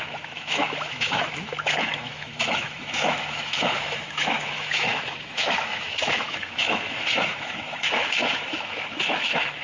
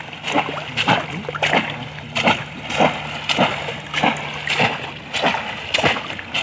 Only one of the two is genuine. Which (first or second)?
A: second